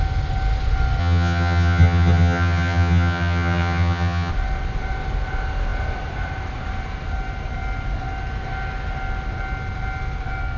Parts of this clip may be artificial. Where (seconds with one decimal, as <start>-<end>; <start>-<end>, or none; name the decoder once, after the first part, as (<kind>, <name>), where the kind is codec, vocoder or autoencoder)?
1.0-4.3 (vocoder, HiFi-GAN)